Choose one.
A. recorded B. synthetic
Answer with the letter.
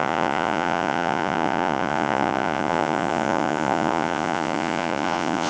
B